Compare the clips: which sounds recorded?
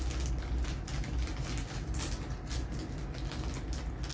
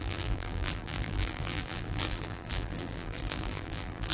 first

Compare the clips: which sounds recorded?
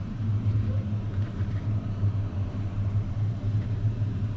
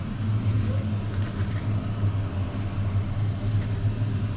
second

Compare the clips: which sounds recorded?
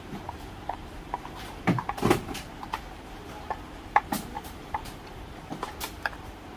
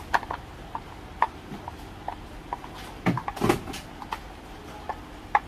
second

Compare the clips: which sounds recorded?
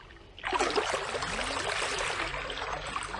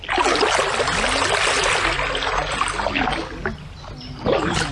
second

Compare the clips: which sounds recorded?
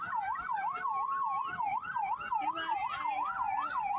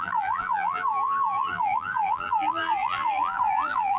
first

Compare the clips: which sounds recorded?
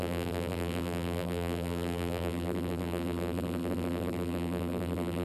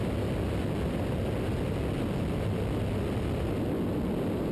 second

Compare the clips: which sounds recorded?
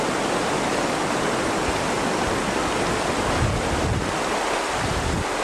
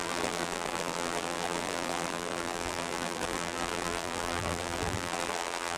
first